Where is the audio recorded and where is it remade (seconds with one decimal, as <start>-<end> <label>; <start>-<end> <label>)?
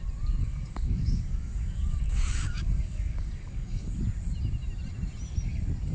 0.0-0.4 recorded; 0.4-3.9 remade; 3.9-5.9 recorded